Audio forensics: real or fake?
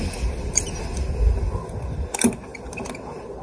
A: real